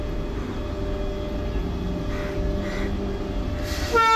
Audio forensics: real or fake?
real